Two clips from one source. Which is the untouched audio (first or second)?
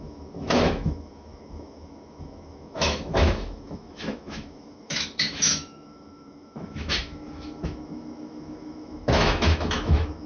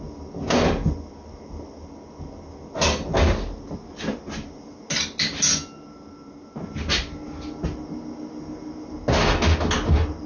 second